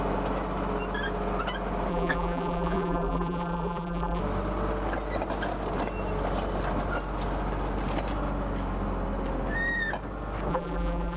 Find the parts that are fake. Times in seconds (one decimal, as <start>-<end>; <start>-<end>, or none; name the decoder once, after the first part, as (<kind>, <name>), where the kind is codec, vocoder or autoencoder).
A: 1.9-4.2 (vocoder, BigVGAN v2); 10.5-11.2